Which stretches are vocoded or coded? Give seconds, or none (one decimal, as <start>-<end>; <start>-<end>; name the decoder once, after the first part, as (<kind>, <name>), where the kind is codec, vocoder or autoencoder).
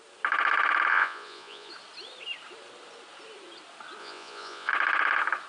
0.9-1.7 (vocoder, Vocos); 4.0-4.7